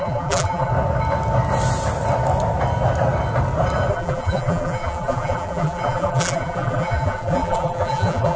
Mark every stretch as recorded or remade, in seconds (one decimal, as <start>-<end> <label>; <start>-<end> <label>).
0.0-0.7 remade; 0.7-3.9 recorded; 3.9-8.4 remade